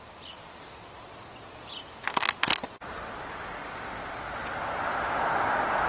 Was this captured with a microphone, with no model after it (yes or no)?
yes